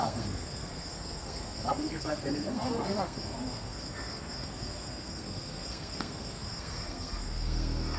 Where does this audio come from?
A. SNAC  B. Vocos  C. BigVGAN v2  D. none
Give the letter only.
A